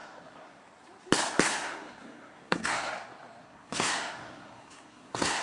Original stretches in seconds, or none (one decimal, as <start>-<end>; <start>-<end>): 0.6-1.5; 2.9-3.4